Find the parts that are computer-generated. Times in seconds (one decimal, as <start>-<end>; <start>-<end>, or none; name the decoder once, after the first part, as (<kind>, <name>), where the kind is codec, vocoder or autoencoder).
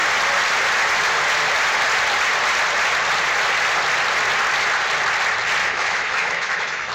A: 5.6-6.9 (autoencoder, DAC-VAE)